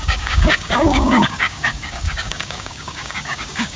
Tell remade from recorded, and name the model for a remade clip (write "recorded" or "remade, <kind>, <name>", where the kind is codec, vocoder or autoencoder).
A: remade, codec, DAC